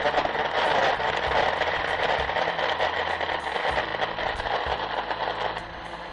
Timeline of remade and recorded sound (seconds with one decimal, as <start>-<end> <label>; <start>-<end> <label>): 0.0-0.8 recorded; 0.8-2.6 remade; 2.6-6.1 recorded